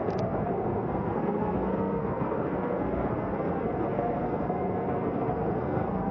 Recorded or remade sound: remade